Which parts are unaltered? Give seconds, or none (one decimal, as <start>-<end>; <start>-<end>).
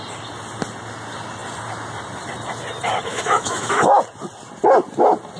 0.0-3.1; 4.0-5.4